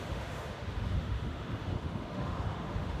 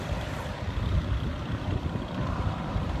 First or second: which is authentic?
second